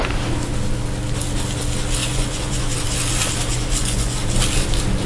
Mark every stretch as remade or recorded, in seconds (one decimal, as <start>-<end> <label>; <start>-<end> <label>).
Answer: 0.0-2.0 recorded; 2.0-2.7 remade; 2.7-3.5 recorded; 3.5-4.2 remade; 4.2-5.1 recorded